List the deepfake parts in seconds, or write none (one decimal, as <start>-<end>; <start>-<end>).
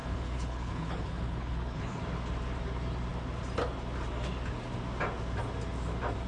0.0-2.0